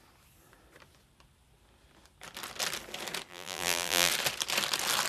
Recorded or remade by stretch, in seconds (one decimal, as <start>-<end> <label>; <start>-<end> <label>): 0.0-3.3 recorded; 3.3-4.1 remade; 4.1-5.1 recorded

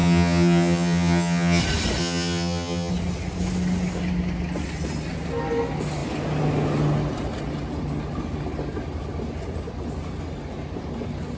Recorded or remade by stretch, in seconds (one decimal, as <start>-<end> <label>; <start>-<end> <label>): 0.0-1.6 remade; 1.6-2.0 recorded; 2.0-2.9 remade; 2.9-11.4 recorded

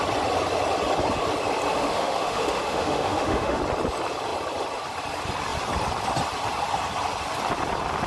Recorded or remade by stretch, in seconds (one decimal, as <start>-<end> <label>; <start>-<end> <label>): 0.0-1.7 recorded; 1.7-3.6 remade; 3.6-8.1 recorded